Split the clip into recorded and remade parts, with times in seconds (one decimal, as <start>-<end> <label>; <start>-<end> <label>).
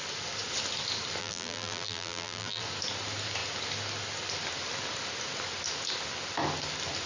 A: 0.0-1.2 recorded; 1.2-2.6 remade; 2.6-7.1 recorded